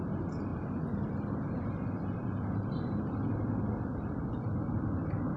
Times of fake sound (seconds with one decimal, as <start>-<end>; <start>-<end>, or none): 0.5-1.2

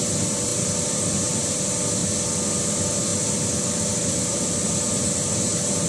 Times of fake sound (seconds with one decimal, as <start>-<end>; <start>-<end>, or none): 0.0-2.0; 2.7-5.9

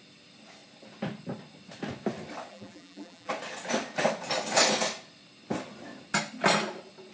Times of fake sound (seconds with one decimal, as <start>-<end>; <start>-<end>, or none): 2.5-3.3

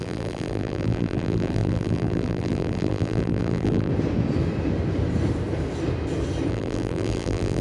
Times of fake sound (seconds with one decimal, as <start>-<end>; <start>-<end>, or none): 0.0-3.9; 6.5-7.6

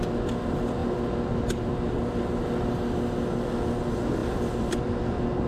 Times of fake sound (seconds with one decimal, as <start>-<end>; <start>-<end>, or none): 4.2-4.8

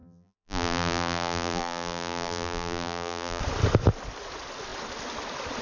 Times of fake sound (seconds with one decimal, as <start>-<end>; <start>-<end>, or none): 0.0-3.4